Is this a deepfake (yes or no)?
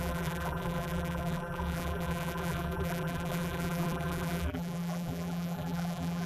yes